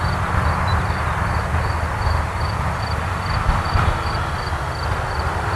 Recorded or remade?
recorded